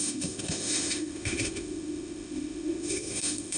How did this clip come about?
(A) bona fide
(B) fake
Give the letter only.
B